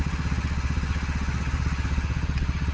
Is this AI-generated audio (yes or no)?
yes